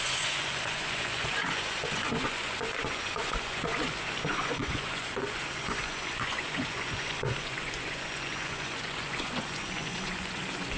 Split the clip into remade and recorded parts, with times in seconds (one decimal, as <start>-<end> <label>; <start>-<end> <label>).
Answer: 0.0-10.8 remade